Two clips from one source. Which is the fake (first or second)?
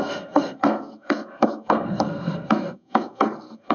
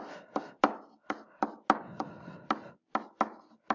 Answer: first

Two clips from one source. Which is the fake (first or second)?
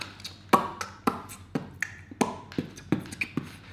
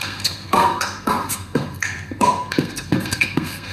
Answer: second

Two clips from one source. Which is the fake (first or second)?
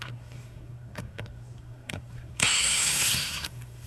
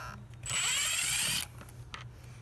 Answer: first